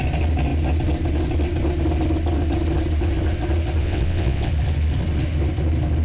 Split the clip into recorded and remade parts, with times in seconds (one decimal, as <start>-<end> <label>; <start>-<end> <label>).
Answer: 0.0-3.8 recorded; 3.8-4.5 remade; 4.5-6.0 recorded